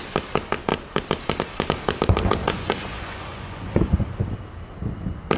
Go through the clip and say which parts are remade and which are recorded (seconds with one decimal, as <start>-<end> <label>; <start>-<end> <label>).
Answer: 0.0-2.4 recorded; 2.4-4.0 remade; 4.0-5.4 recorded